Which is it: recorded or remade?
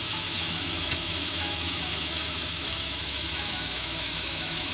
remade